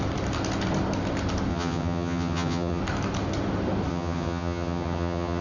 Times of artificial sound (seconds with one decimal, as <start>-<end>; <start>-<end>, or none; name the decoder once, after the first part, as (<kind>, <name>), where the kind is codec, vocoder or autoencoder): 1.5-2.8 (vocoder, HiFi-GAN); 3.9-5.4